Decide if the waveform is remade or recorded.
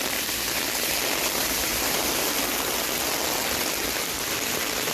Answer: recorded